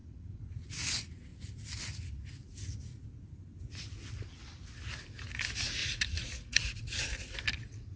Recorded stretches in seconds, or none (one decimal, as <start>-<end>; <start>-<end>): 0.7-5.8; 7.0-8.0